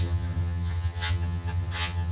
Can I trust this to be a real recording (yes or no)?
no